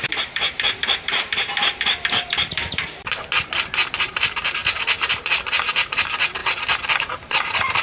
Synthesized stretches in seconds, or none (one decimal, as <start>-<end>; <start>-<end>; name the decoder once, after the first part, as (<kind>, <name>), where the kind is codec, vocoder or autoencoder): 0.0-4.6 (vocoder, BigVGAN v2); 5.1-6.4; 7.0-7.8